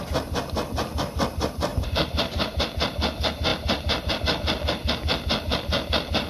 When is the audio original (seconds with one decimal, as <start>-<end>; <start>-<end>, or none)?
0.0-1.7; 2.6-3.5; 4.1-6.3